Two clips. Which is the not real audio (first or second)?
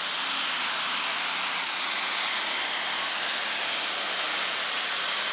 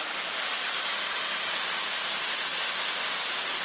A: second